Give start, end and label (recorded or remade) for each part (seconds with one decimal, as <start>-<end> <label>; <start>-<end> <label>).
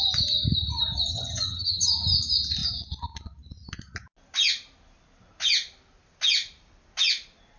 0.0-1.1 recorded; 1.1-1.9 remade; 1.9-7.6 recorded